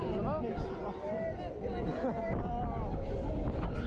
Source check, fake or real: real